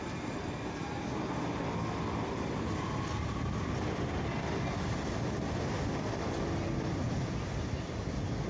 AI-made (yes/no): no